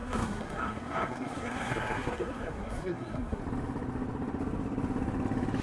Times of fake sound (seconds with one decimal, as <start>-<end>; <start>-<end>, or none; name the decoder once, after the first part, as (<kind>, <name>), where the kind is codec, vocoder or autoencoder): 0.0-3.4 (codec, SNAC)